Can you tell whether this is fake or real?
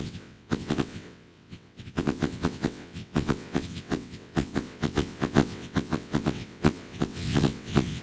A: fake